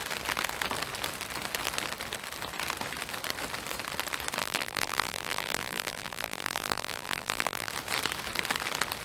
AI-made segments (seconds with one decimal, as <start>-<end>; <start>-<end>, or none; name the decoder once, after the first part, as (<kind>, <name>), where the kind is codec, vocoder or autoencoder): 4.4-7.7 (vocoder, BigVGAN v2)